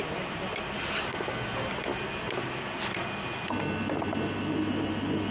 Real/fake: real